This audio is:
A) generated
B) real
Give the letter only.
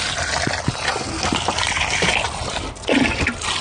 B